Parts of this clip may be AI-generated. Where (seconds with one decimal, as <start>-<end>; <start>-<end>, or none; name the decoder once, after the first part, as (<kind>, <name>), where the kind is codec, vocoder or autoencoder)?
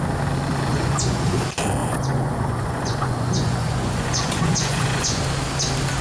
0.7-1.4 (vocoder, Vocos); 1.8-5.2